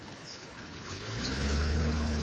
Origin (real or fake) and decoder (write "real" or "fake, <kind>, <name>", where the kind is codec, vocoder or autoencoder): fake, codec, HILCodec